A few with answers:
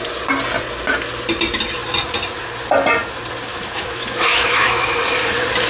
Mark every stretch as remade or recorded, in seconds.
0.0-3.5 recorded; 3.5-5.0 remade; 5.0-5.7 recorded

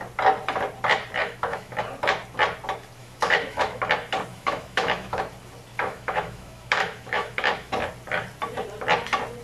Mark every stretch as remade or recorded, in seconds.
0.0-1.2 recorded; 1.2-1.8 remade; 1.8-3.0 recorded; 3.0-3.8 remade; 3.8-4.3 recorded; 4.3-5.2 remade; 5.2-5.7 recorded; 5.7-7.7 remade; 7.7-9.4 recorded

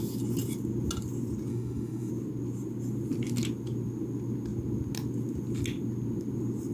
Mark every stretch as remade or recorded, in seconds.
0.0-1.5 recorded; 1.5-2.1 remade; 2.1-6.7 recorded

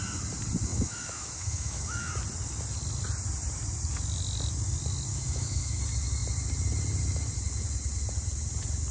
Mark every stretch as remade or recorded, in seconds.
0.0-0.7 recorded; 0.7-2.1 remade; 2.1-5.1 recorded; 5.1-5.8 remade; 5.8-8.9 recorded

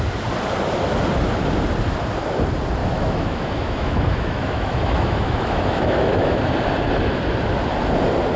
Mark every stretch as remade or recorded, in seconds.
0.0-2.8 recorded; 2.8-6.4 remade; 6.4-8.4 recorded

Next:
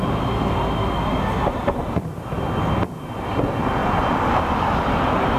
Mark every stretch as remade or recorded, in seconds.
0.0-5.4 recorded

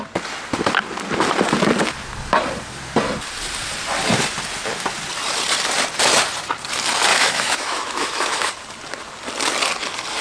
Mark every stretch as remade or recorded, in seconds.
0.0-7.1 recorded; 7.1-8.5 remade; 8.5-10.2 recorded

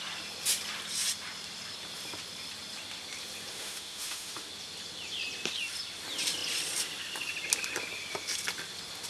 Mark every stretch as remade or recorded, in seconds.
0.0-3.5 recorded; 3.5-4.5 remade; 4.5-9.1 recorded